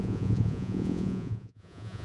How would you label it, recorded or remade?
remade